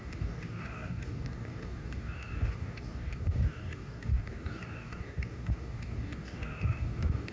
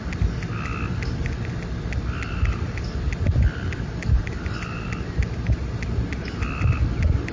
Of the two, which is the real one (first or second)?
second